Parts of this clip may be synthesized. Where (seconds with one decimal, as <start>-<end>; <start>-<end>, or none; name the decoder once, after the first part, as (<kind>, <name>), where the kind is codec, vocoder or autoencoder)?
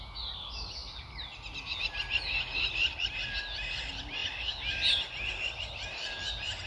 none